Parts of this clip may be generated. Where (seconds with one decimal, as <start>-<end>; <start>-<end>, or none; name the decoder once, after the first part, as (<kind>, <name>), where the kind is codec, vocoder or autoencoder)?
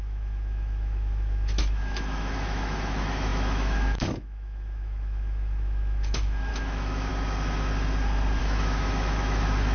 0.0-7.1 (autoencoder, DAC-VAE); 8.4-9.7